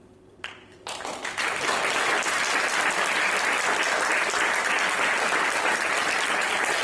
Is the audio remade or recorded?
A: recorded